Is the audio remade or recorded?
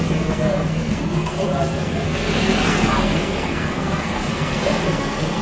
remade